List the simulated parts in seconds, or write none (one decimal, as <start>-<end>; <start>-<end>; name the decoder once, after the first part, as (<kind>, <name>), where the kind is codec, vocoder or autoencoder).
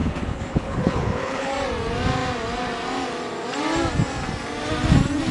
0.0-1.5 (codec, HILCodec)